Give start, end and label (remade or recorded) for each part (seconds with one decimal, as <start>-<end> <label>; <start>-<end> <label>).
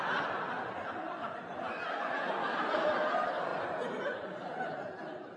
0.0-3.5 recorded; 3.5-5.4 remade